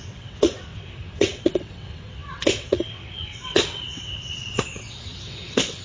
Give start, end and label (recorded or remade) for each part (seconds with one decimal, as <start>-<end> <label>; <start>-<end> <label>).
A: 0.0-5.8 remade